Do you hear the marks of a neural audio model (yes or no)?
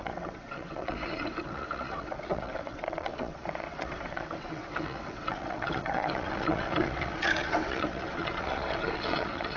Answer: yes